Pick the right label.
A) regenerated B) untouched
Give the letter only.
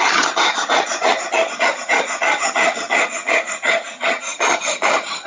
A